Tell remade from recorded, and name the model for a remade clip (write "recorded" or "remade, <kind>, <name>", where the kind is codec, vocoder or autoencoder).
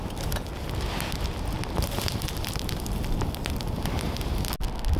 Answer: recorded